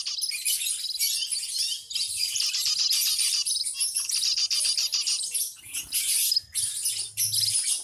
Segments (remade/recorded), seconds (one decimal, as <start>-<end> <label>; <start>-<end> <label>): 0.0-7.8 recorded

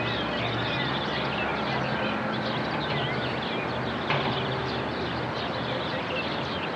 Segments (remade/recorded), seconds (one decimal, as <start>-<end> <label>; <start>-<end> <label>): 0.0-6.8 recorded